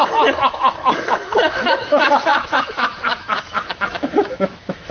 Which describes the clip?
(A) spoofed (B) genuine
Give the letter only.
A